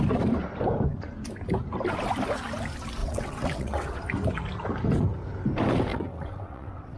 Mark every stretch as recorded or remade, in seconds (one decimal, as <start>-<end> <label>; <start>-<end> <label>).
0.0-3.0 recorded; 3.0-4.0 remade; 4.0-5.9 recorded; 5.9-7.0 remade